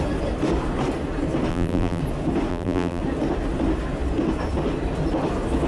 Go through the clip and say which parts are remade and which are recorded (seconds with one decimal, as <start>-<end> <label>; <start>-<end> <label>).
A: 0.0-1.5 recorded; 1.5-2.0 remade; 2.0-2.5 recorded; 2.5-3.0 remade; 3.0-5.7 recorded